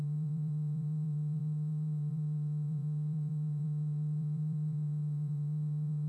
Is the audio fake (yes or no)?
yes